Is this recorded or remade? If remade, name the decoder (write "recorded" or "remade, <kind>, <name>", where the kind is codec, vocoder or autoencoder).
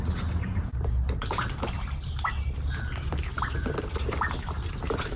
remade, vocoder, BigVGAN v2